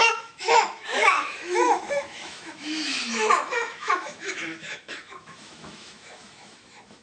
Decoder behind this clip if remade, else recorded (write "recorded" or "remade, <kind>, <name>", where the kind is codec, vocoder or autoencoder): remade, autoencoder, DAC-VAE